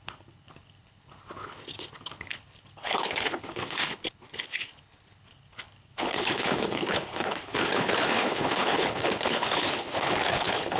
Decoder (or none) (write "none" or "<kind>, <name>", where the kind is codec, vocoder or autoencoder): codec, HILCodec